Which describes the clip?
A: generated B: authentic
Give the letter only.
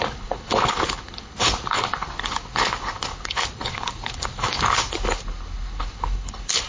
A